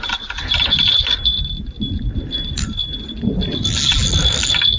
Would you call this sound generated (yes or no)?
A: no